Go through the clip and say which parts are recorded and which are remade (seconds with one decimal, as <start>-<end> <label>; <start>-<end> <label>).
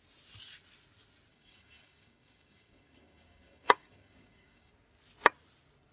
0.0-1.3 recorded; 1.3-4.7 remade; 4.7-5.9 recorded